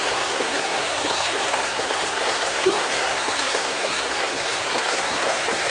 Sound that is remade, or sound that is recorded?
remade